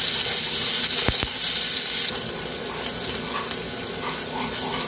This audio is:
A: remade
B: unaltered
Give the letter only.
B